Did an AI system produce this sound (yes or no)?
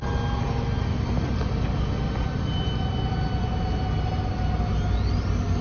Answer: no